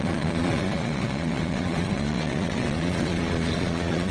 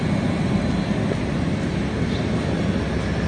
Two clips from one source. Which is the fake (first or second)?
first